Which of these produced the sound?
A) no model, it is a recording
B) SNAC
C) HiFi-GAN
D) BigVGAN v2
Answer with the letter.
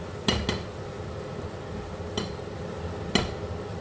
A